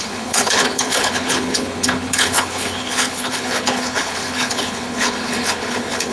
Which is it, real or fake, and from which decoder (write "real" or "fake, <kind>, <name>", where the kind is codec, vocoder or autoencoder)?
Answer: fake, codec, HILCodec